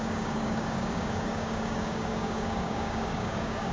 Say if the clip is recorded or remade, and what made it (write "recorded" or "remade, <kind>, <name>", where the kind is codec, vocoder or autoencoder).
remade, codec, DAC